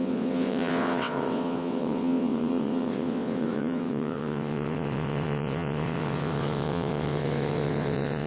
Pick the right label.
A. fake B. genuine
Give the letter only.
A